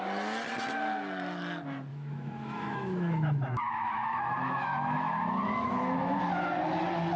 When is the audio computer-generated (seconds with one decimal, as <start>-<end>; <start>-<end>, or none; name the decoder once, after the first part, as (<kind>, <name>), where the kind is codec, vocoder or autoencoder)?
1.9-6.2 (autoencoder, DAC-VAE)